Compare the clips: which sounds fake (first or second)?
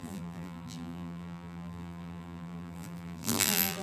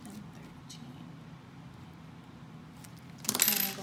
first